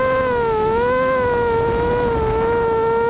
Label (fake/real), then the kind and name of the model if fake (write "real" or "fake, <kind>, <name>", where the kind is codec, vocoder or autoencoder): real